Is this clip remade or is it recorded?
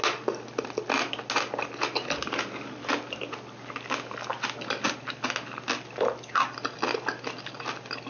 recorded